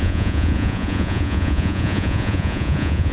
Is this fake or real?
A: fake